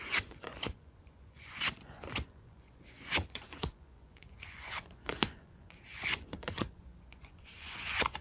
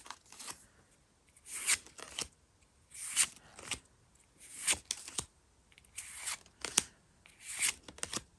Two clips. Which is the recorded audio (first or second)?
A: second